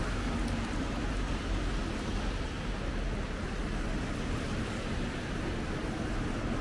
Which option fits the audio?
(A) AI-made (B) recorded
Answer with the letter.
B